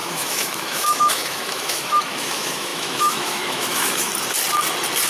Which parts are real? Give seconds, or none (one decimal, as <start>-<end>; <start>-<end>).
4.1-5.1